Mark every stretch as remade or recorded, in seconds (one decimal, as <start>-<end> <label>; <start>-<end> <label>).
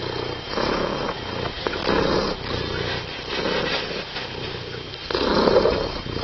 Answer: 0.0-1.8 recorded; 1.8-3.3 remade; 3.3-6.2 recorded